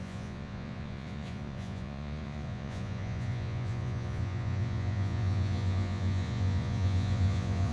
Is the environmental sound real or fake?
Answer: fake